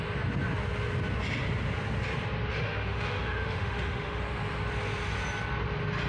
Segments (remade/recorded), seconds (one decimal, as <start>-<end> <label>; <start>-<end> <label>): 0.0-2.5 recorded; 2.5-4.2 remade; 4.2-6.1 recorded

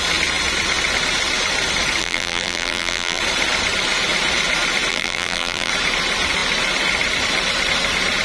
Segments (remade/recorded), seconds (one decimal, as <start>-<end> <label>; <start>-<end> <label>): 0.0-2.0 recorded; 2.0-3.2 remade; 3.2-4.9 recorded; 4.9-5.7 remade; 5.7-8.2 recorded

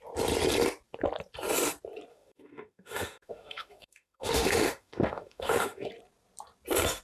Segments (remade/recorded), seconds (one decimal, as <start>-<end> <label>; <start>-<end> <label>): 0.0-2.1 recorded; 2.1-5.9 remade; 5.9-7.0 recorded

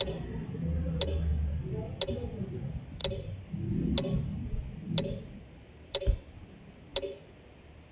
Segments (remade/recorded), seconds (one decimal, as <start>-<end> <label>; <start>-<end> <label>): 0.0-0.4 remade; 0.4-2.1 recorded; 2.1-3.0 remade; 3.0-5.4 recorded; 5.4-6.9 remade; 6.9-7.5 recorded; 7.5-7.9 remade

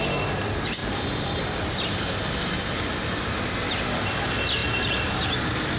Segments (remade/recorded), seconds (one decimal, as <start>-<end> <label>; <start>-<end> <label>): 0.0-0.8 recorded; 0.8-1.4 remade; 1.4-4.6 recorded; 4.6-5.2 remade; 5.2-5.8 recorded

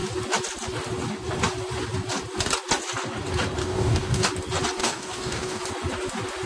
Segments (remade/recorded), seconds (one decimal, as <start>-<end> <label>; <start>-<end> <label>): 0.0-3.6 recorded; 3.6-4.3 remade; 4.3-4.8 recorded; 4.8-5.6 remade; 5.6-6.5 recorded

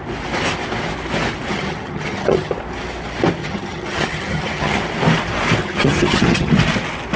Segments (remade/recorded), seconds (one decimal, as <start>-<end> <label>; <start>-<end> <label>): 0.0-1.5 recorded; 1.5-2.5 remade; 2.5-3.4 recorded; 3.4-4.8 remade; 4.8-5.6 recorded; 5.6-6.5 remade; 6.5-7.2 recorded

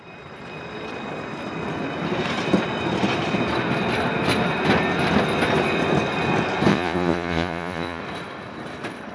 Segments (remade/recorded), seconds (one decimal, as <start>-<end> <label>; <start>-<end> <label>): 0.0-6.7 recorded; 6.7-8.0 remade; 8.0-9.1 recorded